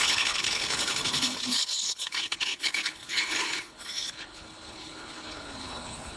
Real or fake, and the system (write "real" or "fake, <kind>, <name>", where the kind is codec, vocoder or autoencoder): fake, codec, HILCodec